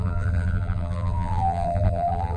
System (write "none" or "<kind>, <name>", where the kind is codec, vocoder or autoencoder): vocoder, BigVGAN v2